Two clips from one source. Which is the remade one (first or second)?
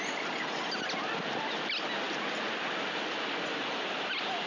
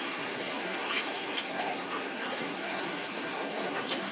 second